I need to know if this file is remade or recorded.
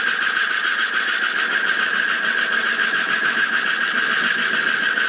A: remade